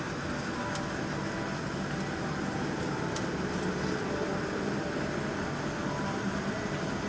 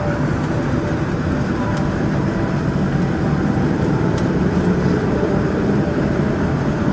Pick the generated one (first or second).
second